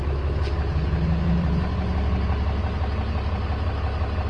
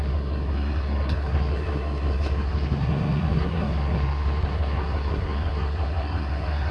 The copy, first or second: second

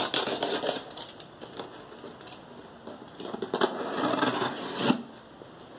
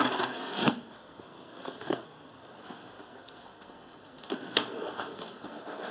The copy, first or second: second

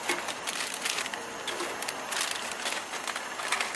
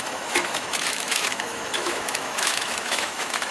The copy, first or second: second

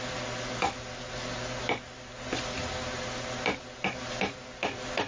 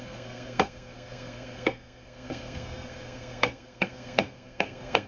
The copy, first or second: second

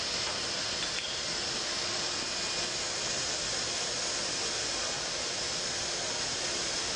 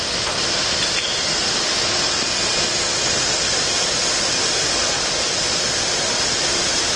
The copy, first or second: second